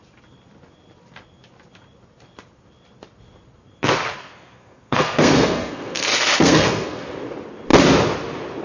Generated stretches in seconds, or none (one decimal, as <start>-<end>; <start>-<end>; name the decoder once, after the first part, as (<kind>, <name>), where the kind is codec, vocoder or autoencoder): 4.2-7.1 (codec, SNAC)

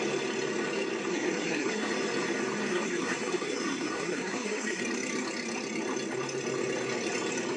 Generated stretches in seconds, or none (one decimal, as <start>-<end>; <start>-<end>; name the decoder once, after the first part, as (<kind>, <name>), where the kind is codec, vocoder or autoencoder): 1.1-1.9 (codec, SNAC); 2.7-4.8

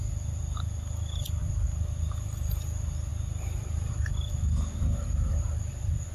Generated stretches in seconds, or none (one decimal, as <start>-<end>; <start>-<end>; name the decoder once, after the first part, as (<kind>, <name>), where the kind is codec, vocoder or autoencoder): none

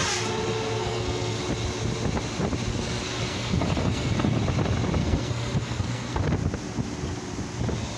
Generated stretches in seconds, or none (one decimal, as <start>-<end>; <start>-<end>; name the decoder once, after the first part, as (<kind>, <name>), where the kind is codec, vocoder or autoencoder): 0.8-1.4 (codec, SNAC); 2.7-4.4; 5.0-6.2

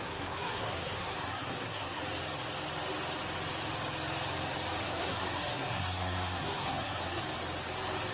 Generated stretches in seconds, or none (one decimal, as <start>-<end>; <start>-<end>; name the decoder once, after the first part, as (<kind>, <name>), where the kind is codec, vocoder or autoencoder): 0.0-2.0 (codec, SNAC); 4.8-7.2

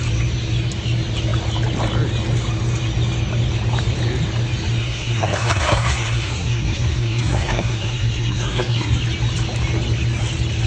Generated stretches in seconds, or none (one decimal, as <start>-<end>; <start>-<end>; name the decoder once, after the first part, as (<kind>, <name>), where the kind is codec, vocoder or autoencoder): 4.8-9.0 (codec, SNAC)

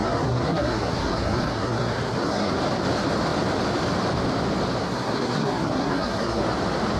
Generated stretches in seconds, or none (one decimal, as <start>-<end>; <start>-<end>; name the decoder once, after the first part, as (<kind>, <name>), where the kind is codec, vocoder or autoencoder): 0.0-2.5 (codec, SNAC); 4.8-6.4

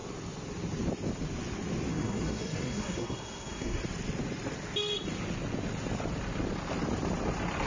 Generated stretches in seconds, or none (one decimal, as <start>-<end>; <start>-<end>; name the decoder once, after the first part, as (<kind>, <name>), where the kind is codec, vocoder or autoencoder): 1.9-3.8 (codec, SNAC)